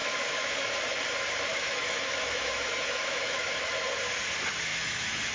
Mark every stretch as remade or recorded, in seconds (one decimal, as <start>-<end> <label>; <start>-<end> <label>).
0.0-0.7 remade; 0.7-1.5 recorded; 1.5-3.7 remade; 3.7-4.7 recorded; 4.7-5.3 remade